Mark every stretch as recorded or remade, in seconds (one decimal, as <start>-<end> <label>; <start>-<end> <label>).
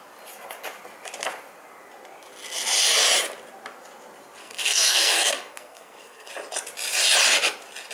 0.0-4.4 recorded; 4.4-6.3 remade; 6.3-7.9 recorded